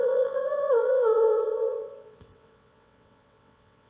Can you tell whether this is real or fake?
fake